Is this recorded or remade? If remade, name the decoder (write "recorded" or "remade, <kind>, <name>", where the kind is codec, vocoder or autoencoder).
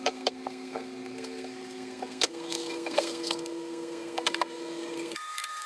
remade, codec, SNAC